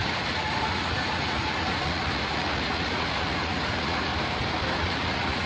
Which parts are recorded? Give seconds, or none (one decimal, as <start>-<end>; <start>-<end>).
4.1-4.8